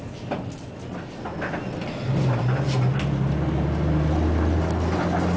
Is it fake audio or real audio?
real